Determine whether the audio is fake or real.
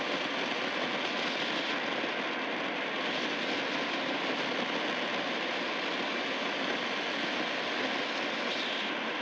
real